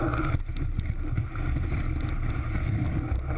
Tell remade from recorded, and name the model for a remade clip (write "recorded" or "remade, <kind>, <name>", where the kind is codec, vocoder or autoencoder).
recorded